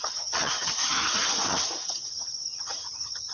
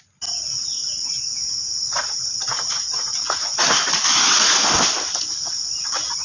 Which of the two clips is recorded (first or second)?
second